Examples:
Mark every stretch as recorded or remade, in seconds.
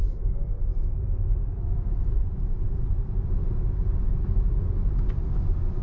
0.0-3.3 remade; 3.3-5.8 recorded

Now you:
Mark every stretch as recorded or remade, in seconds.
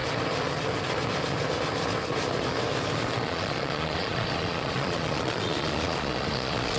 0.0-3.1 recorded; 3.1-6.8 remade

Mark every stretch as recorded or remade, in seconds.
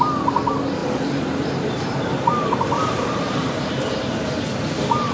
0.0-0.8 recorded; 0.8-3.7 remade; 3.7-5.1 recorded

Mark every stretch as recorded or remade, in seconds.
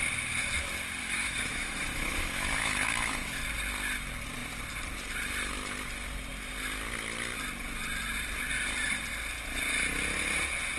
0.0-1.0 recorded; 1.0-3.4 remade; 3.4-10.8 recorded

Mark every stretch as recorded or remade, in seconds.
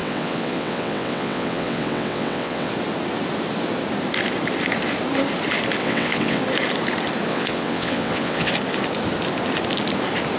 0.0-2.7 remade; 2.7-5.8 recorded; 5.8-6.4 remade; 6.4-7.3 recorded; 7.3-8.5 remade; 8.5-10.4 recorded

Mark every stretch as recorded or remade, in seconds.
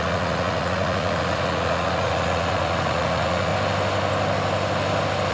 0.0-3.5 remade; 3.5-5.3 recorded